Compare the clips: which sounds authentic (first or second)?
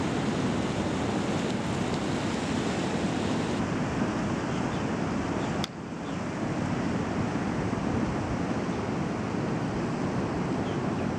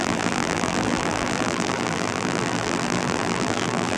first